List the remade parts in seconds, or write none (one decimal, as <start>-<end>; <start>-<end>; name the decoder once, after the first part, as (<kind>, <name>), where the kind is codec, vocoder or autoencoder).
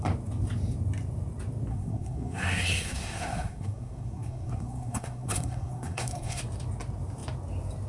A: 1.7-6.4 (codec, SNAC)